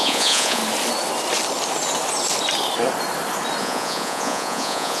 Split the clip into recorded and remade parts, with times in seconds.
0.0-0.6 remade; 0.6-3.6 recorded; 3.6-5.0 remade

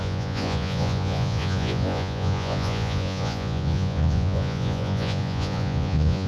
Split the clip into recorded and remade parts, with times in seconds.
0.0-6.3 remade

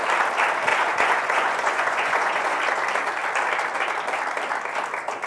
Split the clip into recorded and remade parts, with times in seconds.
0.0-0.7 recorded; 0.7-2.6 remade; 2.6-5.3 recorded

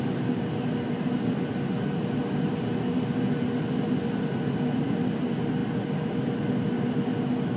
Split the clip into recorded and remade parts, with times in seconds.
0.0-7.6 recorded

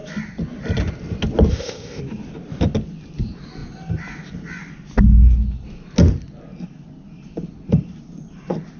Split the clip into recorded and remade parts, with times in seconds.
0.0-1.5 recorded; 1.5-2.0 remade; 2.0-8.8 recorded

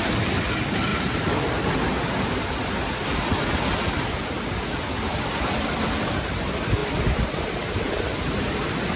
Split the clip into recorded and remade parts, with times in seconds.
0.0-0.9 recorded; 0.9-1.5 remade; 1.5-6.8 recorded; 6.8-9.0 remade

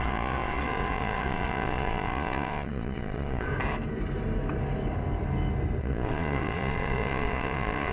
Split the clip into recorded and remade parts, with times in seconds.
0.0-3.5 remade; 3.5-5.8 recorded; 5.8-7.9 remade

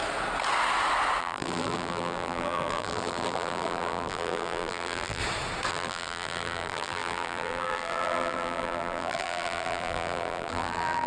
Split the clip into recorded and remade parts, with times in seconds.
0.0-1.2 recorded; 1.2-5.2 remade; 5.2-5.7 recorded; 5.7-11.1 remade